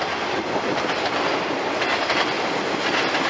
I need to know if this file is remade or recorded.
recorded